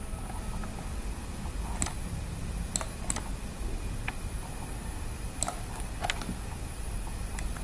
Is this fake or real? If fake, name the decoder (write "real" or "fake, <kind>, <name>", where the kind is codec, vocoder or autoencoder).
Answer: real